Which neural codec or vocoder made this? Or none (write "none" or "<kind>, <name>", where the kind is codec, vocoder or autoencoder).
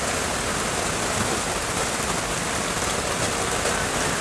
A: none